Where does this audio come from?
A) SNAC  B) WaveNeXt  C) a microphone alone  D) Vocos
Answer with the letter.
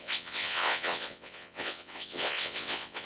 B